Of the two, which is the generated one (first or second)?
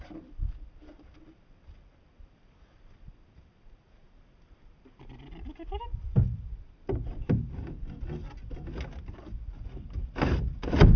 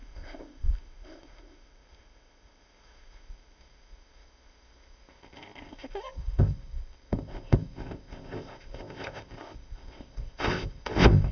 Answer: second